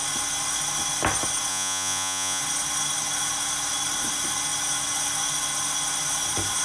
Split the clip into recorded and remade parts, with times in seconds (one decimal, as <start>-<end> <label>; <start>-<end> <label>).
0.0-1.5 recorded; 1.5-2.4 remade; 2.4-6.6 recorded